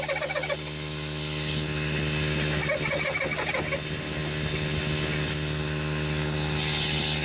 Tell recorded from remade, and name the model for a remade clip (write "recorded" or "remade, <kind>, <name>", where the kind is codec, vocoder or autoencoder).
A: recorded